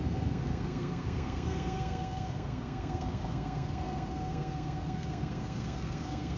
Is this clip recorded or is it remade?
remade